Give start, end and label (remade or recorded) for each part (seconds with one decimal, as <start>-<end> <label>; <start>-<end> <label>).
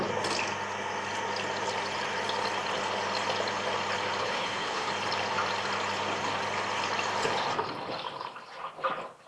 0.0-4.2 recorded; 4.2-4.9 remade; 4.9-9.3 recorded